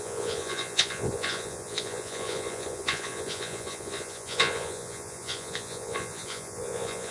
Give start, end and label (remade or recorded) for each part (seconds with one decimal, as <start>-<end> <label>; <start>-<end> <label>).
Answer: 0.0-7.1 remade